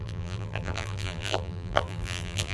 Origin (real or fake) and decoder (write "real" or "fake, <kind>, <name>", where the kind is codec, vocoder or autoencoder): fake, vocoder, BigVGAN v2